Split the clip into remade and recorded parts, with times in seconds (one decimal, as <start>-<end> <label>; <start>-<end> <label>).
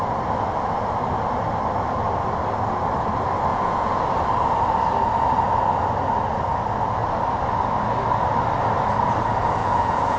0.0-3.5 recorded; 3.5-4.0 remade; 4.0-9.6 recorded; 9.6-10.2 remade